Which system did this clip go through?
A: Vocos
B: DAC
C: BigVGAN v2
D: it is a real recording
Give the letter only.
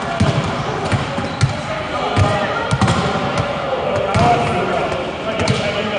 D